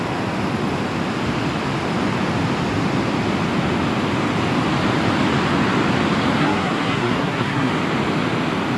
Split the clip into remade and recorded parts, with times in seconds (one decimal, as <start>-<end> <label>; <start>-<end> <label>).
0.0-6.4 recorded; 6.4-7.7 remade; 7.7-8.8 recorded